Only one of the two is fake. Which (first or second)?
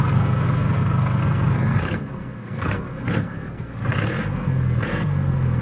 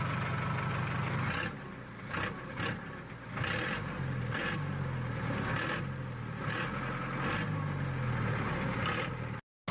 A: first